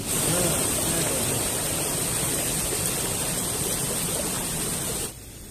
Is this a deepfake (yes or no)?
no